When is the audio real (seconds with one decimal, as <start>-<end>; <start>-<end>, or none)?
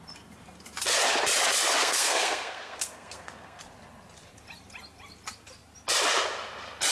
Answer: 0.0-1.8; 3.6-6.9